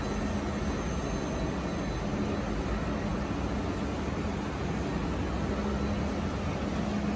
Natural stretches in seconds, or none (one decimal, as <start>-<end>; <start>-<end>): 0.0-7.2